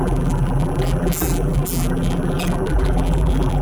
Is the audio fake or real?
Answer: fake